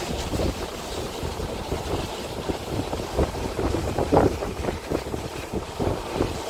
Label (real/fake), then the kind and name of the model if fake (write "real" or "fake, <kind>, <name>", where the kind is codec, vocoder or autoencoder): fake, vocoder, BigVGAN v2